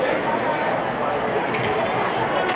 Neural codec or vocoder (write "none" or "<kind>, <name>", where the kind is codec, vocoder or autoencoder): none